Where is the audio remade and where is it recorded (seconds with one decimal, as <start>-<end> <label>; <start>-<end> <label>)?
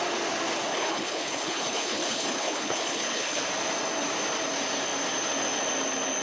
0.0-0.7 recorded; 0.7-3.5 remade; 3.5-6.2 recorded